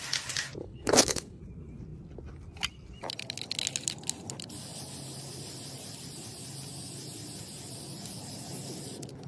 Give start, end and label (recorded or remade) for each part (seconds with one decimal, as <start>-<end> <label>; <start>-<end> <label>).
0.0-0.6 recorded; 0.6-1.4 remade; 1.4-9.3 recorded